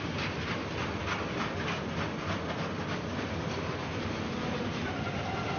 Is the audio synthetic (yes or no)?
no